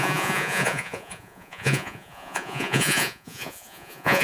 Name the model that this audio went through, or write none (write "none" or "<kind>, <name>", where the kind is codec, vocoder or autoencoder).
vocoder, Vocos